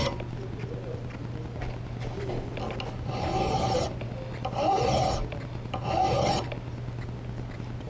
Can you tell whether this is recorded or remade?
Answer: recorded